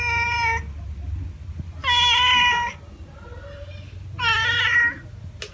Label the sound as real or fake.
real